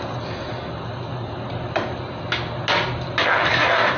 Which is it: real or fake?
real